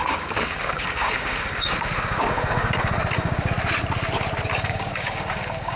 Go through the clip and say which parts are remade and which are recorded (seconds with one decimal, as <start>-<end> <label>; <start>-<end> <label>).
0.0-3.5 remade; 3.5-4.5 recorded; 4.5-5.8 remade